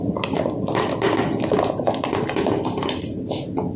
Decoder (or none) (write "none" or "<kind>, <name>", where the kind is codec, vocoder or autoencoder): none